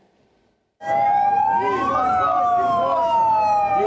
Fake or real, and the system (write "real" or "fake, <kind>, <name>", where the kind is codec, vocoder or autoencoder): real